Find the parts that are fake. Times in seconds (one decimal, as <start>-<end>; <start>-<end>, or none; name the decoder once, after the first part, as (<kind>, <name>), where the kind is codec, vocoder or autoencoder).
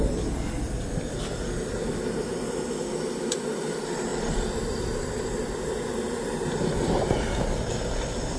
4.1-7.4 (vocoder, BigVGAN v2)